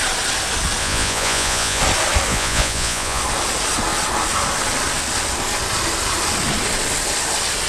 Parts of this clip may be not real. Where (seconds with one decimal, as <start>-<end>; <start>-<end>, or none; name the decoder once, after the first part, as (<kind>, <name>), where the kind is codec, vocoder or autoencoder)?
0.8-1.8 (vocoder, Vocos); 2.3-3.2